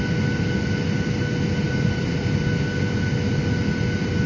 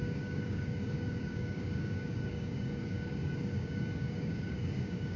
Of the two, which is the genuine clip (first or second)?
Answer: first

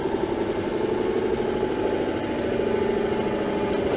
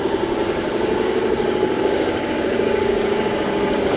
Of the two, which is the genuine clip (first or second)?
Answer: first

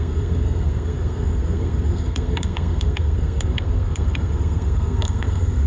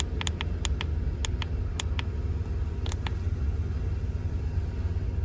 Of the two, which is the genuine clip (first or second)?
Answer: second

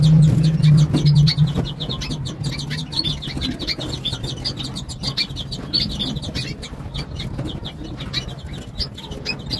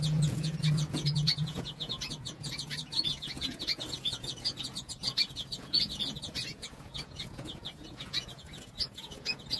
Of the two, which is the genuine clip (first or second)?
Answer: first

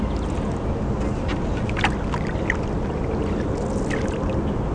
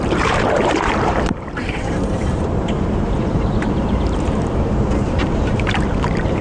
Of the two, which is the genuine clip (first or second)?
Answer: first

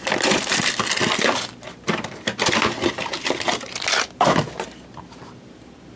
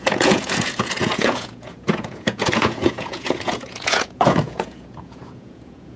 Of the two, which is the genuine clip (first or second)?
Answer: first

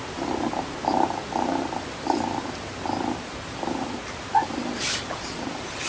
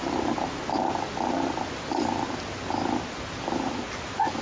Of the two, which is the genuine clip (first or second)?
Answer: second